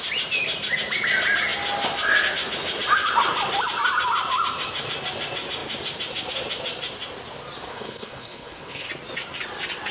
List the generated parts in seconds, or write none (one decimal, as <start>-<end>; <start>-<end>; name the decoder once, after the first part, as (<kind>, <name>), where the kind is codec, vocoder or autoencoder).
7.7-8.9 (codec, HILCodec)